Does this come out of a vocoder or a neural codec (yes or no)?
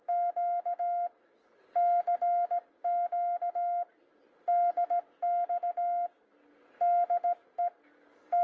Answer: no